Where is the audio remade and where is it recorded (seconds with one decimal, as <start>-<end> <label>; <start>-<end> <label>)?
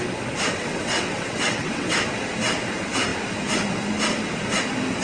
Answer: 0.0-0.6 recorded; 0.6-1.9 remade; 1.9-5.0 recorded